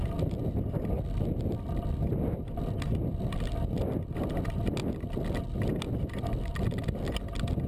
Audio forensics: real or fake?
real